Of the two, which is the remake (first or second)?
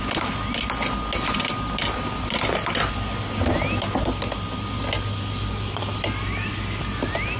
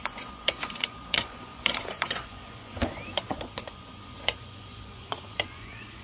second